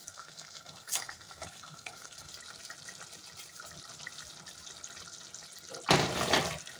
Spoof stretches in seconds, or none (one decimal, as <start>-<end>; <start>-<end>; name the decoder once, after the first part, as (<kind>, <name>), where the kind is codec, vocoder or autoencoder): 0.0-2.3 (codec, SNAC)